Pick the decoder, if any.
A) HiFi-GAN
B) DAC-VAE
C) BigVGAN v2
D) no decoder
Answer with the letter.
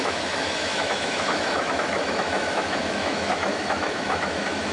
B